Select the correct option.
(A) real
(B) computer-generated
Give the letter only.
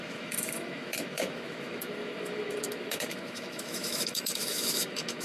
B